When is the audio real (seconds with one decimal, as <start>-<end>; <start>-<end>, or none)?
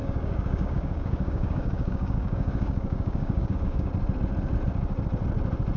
3.9-5.8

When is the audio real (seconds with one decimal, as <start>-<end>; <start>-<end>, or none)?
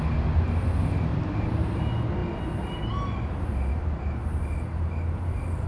0.0-1.1; 1.8-5.7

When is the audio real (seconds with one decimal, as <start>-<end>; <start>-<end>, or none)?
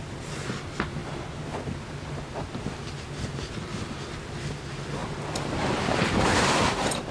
0.0-7.1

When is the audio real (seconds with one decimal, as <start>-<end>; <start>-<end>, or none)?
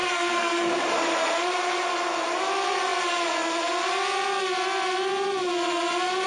0.7-6.3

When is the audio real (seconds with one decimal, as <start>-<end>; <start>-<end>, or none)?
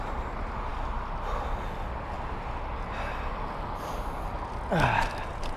0.0-5.6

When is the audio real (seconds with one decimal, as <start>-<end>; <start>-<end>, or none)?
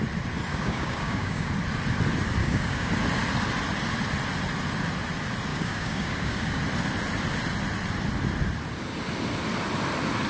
0.0-0.5; 1.5-2.4; 2.9-5.5; 6.6-10.3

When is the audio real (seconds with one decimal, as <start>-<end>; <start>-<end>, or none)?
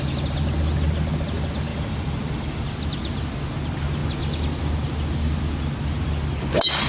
0.0-1.7; 2.6-6.9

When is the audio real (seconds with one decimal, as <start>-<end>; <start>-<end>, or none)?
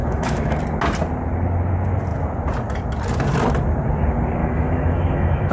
0.6-4.4